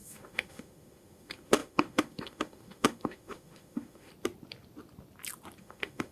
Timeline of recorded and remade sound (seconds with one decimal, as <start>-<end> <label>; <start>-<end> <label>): 0.0-4.1 remade; 4.1-5.6 recorded; 5.6-6.1 remade